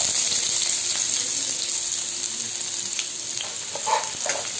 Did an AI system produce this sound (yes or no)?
no